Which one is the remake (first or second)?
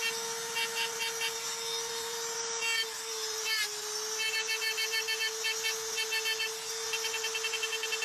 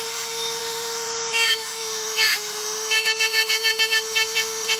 second